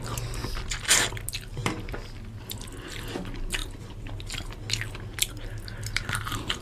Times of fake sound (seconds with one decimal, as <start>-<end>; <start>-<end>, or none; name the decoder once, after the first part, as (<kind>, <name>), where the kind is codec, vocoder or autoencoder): 0.4-1.1 (vocoder, BigVGAN v2); 1.6-3.1; 3.6-4.2